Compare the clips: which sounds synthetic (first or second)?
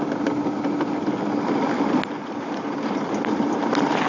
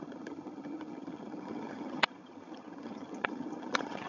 second